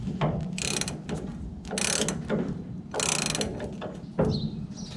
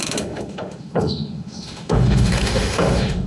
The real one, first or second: first